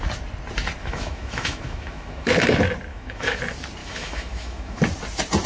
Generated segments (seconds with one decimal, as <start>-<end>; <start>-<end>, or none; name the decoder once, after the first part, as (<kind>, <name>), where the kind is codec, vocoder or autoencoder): 0.8-2.3 (autoencoder, DAC-VAE); 2.9-3.4; 3.8-4.8